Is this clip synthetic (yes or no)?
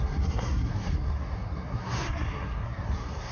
yes